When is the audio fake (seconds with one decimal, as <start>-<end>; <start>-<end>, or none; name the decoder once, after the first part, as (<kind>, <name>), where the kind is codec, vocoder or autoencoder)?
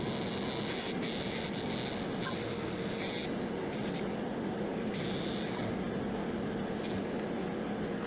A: none